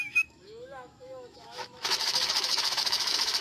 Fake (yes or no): yes